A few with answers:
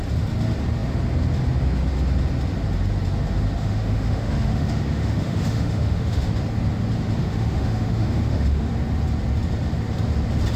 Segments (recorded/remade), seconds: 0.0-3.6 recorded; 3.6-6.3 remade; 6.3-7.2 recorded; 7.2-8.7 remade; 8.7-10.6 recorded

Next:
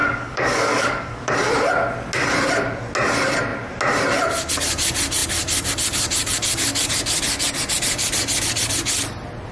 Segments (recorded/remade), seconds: 0.0-1.3 remade; 1.3-9.5 recorded

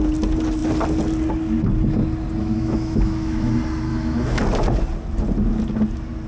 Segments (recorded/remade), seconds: 0.0-2.4 recorded; 2.4-3.5 remade; 3.5-3.9 recorded; 3.9-4.4 remade; 4.4-6.3 recorded

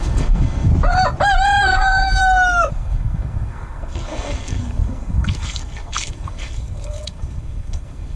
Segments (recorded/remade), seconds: 0.0-0.7 remade; 0.7-1.6 recorded; 1.6-2.2 remade; 2.2-2.7 recorded; 2.7-8.2 remade

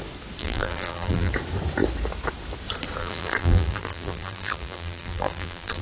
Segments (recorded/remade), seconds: 0.0-0.4 recorded; 0.4-1.3 remade; 1.3-3.0 recorded; 3.0-5.8 remade

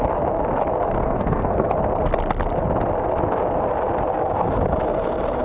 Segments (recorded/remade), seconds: 0.0-1.0 recorded; 1.0-1.7 remade; 1.7-5.4 recorded